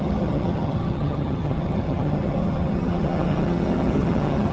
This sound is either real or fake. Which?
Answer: fake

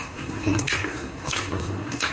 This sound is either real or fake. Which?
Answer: fake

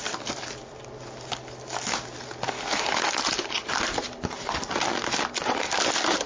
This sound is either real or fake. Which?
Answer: real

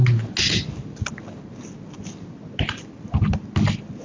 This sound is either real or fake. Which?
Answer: real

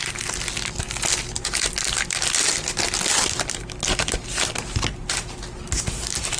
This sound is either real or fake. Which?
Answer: real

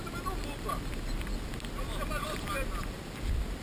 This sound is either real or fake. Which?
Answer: real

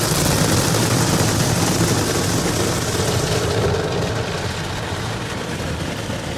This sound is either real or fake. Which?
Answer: real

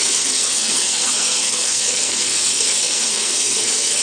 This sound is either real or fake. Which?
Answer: fake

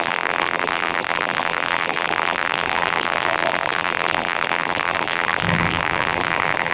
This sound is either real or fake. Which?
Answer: fake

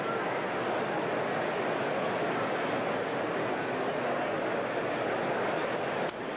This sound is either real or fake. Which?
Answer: real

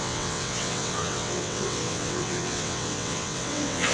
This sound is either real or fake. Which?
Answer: fake